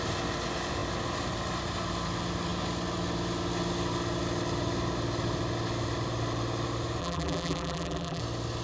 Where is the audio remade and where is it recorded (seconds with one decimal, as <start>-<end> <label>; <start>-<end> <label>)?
0.0-7.0 recorded; 7.0-8.2 remade; 8.2-8.6 recorded